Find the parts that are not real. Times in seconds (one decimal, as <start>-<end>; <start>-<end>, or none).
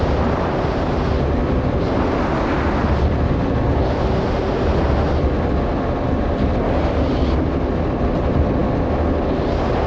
none